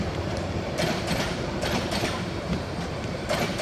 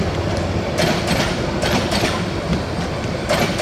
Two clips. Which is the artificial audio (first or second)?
first